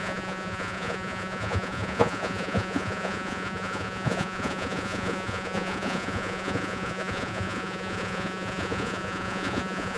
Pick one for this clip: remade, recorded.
remade